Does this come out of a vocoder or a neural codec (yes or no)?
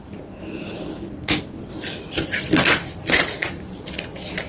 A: no